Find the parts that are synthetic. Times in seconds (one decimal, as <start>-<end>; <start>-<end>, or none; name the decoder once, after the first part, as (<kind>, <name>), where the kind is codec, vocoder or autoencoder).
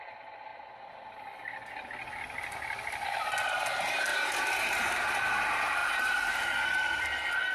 4.1-5.2 (vocoder, BigVGAN v2); 5.8-6.6